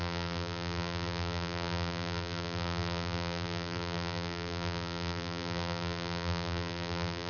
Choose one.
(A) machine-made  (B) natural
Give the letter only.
A